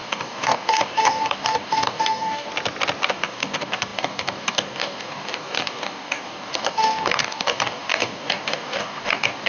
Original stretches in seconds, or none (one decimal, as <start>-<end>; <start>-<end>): 2.5-3.1